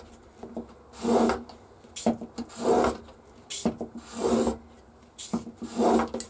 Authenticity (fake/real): real